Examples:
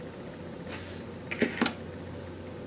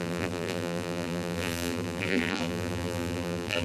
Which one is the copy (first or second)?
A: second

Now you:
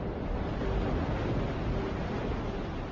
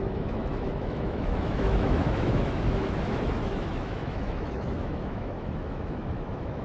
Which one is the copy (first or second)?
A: second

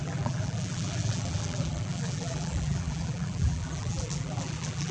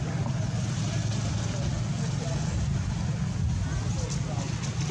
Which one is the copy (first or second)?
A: first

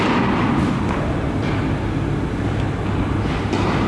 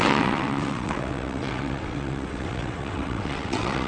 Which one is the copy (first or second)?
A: second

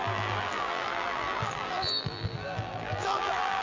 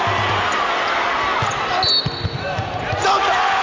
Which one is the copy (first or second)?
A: first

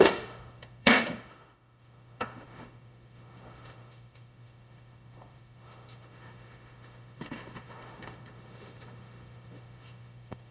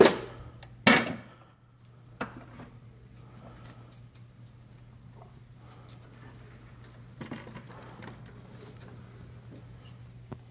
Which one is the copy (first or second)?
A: first